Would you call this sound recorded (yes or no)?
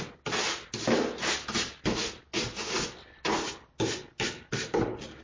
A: yes